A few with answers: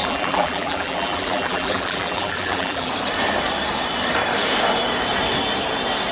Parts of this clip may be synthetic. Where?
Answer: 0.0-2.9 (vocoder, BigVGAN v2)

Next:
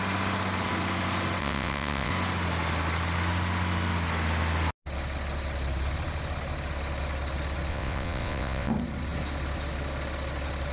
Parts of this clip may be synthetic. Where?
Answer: 1.4-2.1 (vocoder, WaveNeXt); 7.7-8.7

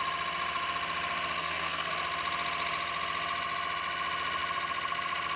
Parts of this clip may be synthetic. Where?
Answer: 1.4-1.9 (codec, SNAC)